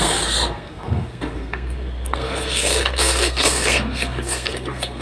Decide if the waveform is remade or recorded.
remade